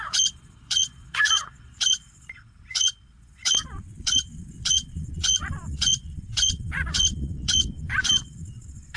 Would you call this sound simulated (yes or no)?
yes